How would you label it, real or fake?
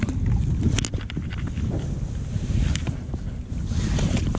real